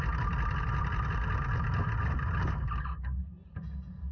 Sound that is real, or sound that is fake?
real